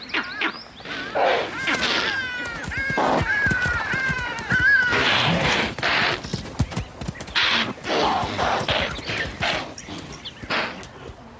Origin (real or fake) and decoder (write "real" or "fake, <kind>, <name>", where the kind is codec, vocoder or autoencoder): real